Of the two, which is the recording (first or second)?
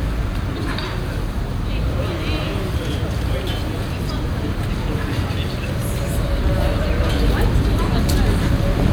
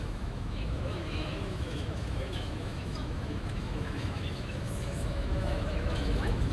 first